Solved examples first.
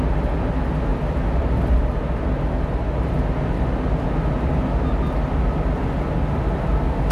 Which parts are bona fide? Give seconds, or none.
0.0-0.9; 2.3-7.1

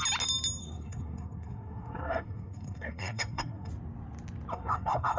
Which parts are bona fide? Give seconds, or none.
0.0-0.6; 3.7-4.5

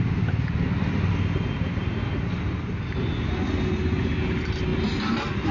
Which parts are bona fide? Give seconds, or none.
0.0-5.5